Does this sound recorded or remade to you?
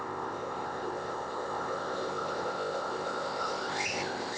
remade